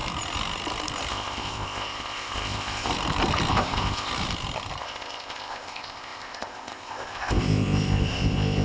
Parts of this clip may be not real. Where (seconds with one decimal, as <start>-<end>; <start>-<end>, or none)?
1.1-2.9; 3.5-4.1; 4.8-8.6